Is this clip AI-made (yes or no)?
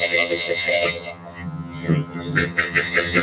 yes